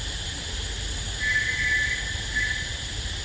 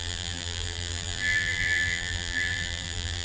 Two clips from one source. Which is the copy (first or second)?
second